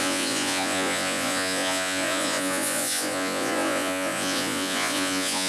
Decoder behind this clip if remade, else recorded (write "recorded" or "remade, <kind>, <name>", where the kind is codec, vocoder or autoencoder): remade, vocoder, Vocos